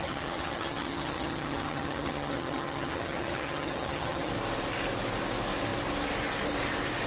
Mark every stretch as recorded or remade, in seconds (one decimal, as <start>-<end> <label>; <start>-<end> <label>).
0.0-4.3 remade; 4.3-7.1 recorded